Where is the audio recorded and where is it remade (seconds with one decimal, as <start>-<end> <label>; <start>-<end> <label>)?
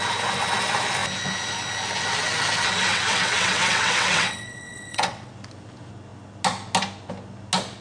0.0-2.9 recorded; 2.9-5.3 remade; 5.3-7.8 recorded